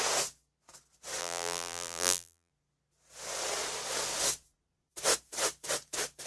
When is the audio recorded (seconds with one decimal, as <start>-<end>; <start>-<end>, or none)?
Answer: 0.0-1.2; 2.5-6.3